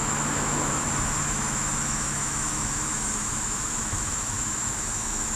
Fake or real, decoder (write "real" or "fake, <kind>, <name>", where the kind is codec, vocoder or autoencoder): fake, autoencoder, DAC-VAE